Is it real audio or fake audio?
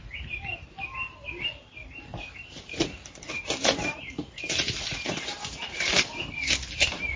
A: fake